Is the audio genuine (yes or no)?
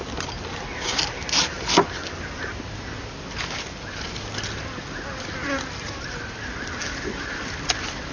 yes